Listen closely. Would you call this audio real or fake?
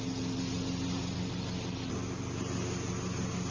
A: real